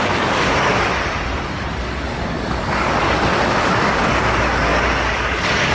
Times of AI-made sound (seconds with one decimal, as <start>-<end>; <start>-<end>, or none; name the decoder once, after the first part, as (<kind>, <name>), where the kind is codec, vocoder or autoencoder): 0.0-0.9 (codec, DAC); 1.8-5.7